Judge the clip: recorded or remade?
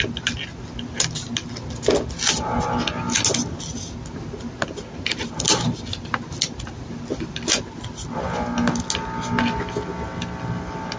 recorded